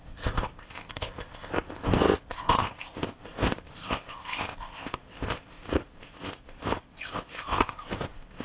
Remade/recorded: remade